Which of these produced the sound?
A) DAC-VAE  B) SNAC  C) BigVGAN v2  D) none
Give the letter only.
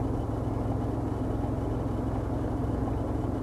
D